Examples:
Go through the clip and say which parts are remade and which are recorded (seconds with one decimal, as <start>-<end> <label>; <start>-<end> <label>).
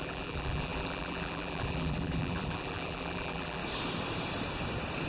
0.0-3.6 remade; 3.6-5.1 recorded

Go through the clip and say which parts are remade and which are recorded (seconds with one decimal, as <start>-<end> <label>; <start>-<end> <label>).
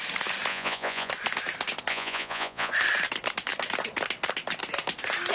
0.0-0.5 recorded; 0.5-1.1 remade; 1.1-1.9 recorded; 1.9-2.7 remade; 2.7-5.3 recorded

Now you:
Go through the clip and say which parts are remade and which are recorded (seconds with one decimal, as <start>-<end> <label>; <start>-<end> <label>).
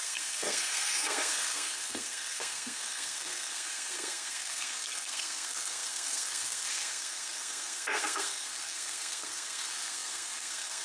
0.0-10.8 remade